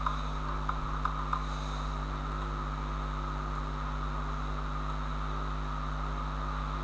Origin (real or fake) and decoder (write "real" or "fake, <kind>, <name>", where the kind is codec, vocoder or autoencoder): real